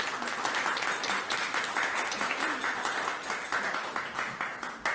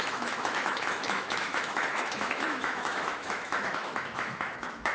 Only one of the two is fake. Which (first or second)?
second